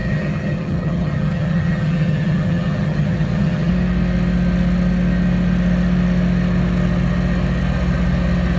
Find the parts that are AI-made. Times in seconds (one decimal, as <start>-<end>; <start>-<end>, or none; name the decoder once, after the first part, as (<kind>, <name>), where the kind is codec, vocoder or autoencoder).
0.0-3.7 (vocoder, HiFi-GAN)